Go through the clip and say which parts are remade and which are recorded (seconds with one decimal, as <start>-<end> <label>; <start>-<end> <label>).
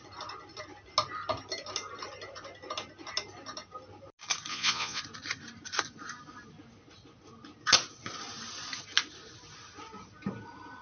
0.0-4.5 recorded; 4.5-5.0 remade; 5.0-10.8 recorded